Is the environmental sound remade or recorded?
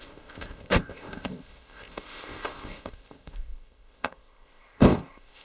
remade